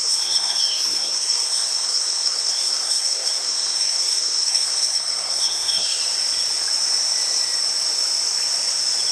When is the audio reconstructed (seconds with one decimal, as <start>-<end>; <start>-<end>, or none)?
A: 0.0-6.0